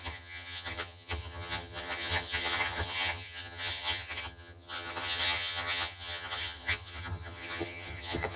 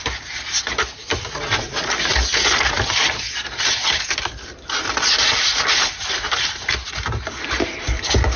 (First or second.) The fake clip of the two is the first